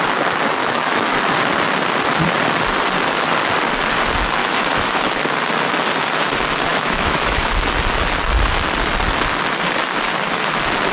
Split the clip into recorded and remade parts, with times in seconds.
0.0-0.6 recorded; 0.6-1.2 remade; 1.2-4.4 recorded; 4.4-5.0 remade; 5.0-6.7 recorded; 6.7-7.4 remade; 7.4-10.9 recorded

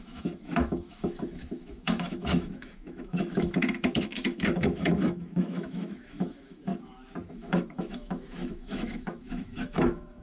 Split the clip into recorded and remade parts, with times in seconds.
0.0-6.7 remade; 6.7-7.3 recorded; 7.3-10.2 remade

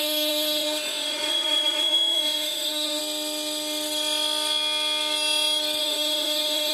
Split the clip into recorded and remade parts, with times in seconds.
0.0-3.0 remade; 3.0-5.8 recorded; 5.8-6.7 remade

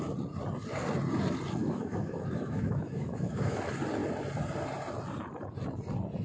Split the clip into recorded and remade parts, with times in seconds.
0.0-1.6 recorded; 1.6-3.6 remade; 3.6-6.2 recorded

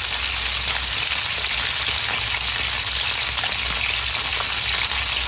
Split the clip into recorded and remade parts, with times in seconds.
0.0-5.3 recorded

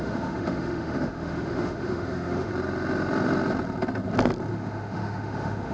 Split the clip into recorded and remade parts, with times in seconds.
0.0-2.5 remade; 2.5-4.5 recorded; 4.5-5.7 remade

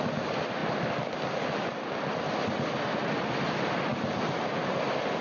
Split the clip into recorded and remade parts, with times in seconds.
0.0-5.2 recorded